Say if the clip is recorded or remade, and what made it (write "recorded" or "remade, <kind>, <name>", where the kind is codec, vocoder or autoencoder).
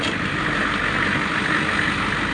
recorded